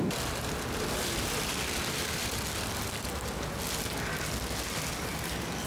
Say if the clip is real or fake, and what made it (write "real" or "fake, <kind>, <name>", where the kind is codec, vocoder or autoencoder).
real